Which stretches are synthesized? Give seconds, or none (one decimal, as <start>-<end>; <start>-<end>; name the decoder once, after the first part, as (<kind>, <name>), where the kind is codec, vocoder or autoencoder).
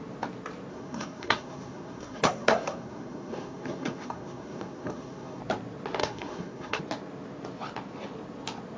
0.7-5.4 (codec, SNAC); 6.0-6.8